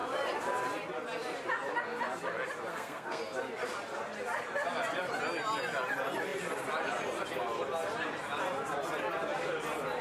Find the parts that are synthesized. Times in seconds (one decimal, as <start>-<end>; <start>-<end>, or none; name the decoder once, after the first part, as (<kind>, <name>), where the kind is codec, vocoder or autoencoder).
2.7-3.2 (codec, SNAC)